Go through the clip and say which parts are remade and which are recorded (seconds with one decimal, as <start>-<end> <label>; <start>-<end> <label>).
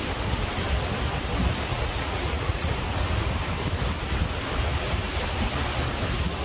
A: 0.0-1.7 recorded; 1.7-2.7 remade; 2.7-6.4 recorded